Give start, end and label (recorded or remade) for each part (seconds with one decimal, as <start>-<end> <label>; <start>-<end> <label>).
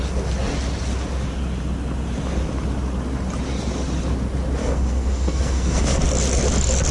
0.0-4.6 recorded; 4.6-6.0 remade; 6.0-6.9 recorded